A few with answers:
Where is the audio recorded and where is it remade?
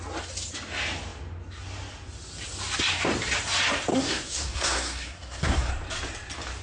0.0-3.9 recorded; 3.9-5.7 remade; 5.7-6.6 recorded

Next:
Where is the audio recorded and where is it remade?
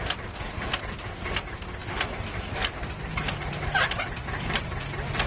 0.0-5.3 recorded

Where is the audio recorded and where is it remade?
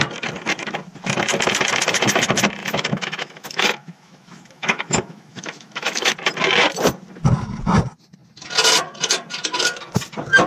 0.0-2.6 recorded; 2.6-6.1 remade; 6.1-10.5 recorded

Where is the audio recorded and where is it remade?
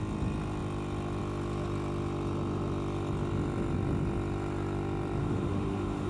0.0-5.2 recorded; 5.2-6.1 remade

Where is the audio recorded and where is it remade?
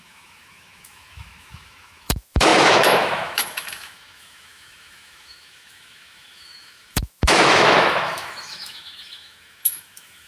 0.0-10.3 remade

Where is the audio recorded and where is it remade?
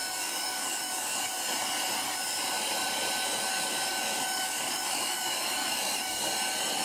0.0-1.3 remade; 1.3-3.5 recorded; 3.5-6.3 remade; 6.3-6.8 recorded